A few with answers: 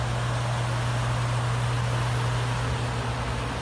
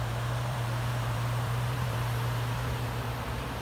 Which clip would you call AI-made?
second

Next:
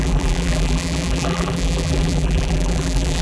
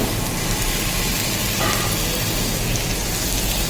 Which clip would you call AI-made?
first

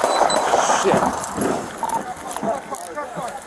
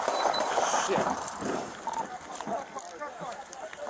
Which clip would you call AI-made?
second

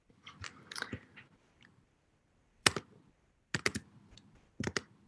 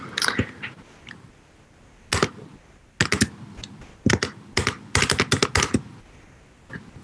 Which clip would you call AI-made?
first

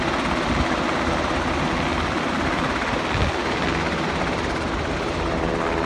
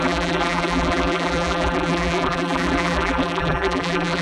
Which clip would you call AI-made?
second